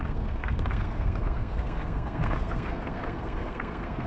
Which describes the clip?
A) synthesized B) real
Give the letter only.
A